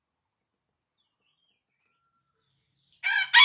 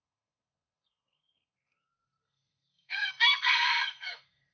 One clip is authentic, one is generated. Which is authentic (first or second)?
first